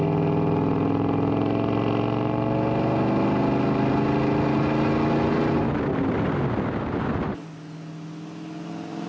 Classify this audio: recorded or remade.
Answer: recorded